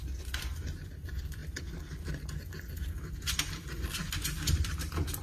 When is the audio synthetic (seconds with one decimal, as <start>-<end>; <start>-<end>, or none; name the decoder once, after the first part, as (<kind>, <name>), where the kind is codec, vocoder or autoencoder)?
0.0-1.4 (vocoder, BigVGAN v2); 4.5-5.2